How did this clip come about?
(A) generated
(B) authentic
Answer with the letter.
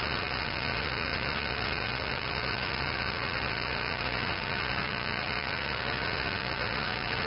A